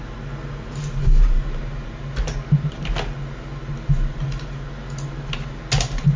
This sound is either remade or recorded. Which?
recorded